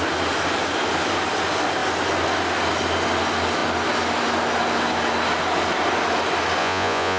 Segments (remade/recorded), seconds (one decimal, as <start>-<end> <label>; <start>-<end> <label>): 0.0-6.6 recorded; 6.6-7.2 remade